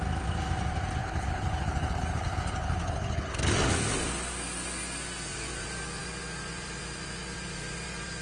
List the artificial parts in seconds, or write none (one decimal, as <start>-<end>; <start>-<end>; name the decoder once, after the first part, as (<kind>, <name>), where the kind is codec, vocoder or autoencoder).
1.0-3.5 (codec, HILCodec)